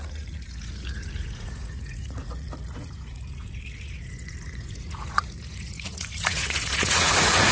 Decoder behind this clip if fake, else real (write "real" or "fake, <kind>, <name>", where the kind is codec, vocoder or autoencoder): fake, vocoder, Vocos